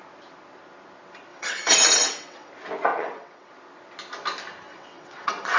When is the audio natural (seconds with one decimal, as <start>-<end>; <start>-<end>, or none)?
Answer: 0.0-1.3; 2.5-2.9; 3.5-4.7